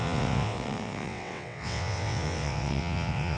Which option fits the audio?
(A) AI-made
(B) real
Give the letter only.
A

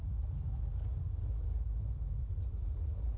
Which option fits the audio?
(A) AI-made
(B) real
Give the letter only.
A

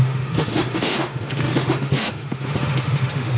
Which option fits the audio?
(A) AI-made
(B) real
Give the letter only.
A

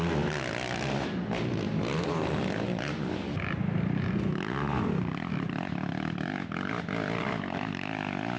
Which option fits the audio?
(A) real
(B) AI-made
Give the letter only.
A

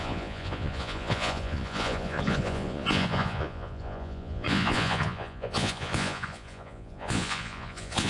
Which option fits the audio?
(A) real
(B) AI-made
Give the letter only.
B